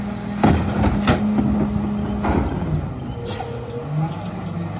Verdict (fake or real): real